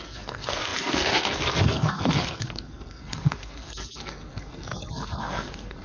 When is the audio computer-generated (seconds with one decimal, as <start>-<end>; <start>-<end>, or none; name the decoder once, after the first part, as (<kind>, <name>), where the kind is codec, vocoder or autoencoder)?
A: 0.0-5.8 (codec, SNAC)